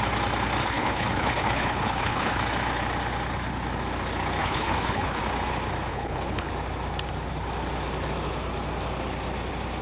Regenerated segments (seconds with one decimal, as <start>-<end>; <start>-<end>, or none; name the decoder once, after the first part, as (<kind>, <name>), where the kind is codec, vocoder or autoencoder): 0.6-2.4 (codec, HILCodec); 4.4-5.2; 5.9-6.5